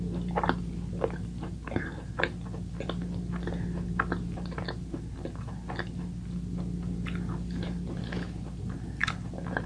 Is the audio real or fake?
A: real